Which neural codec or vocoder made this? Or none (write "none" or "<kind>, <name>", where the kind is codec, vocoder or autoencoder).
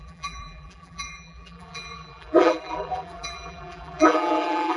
vocoder, BigVGAN v2